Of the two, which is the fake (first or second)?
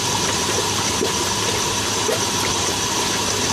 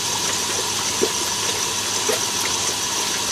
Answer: first